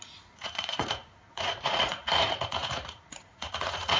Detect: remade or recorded remade